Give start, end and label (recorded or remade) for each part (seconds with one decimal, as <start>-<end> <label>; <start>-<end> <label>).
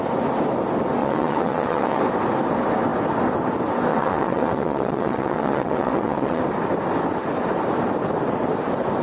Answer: 0.0-1.0 recorded; 1.0-2.0 remade; 2.0-3.9 recorded; 3.9-6.4 remade; 6.4-9.0 recorded